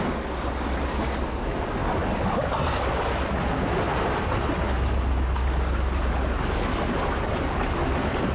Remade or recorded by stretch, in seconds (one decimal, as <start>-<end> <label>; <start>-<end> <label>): 0.0-8.3 recorded